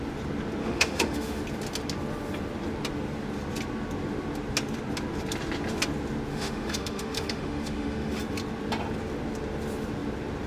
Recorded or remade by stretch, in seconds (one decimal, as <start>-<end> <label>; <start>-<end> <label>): 0.0-0.6 recorded; 0.6-1.4 remade; 1.4-6.3 recorded; 6.3-8.2 remade; 8.2-10.5 recorded